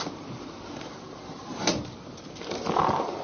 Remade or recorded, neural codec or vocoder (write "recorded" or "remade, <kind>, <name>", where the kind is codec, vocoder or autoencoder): recorded